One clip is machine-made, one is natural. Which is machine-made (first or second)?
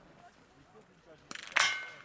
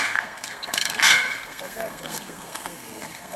second